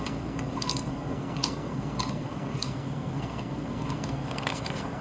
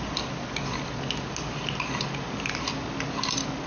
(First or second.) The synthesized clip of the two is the first